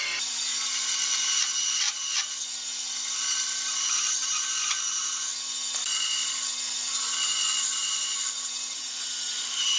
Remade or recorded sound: recorded